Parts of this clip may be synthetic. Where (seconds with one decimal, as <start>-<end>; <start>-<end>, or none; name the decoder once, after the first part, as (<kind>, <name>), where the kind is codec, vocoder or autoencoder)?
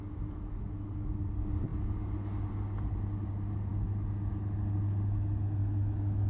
5.6-6.3 (autoencoder, DAC-VAE)